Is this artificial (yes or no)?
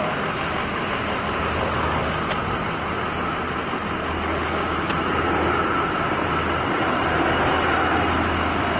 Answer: no